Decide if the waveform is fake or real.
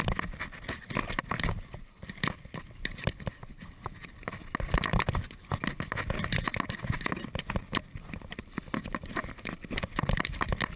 real